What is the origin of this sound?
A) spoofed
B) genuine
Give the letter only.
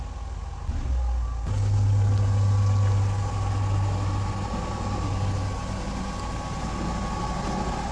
B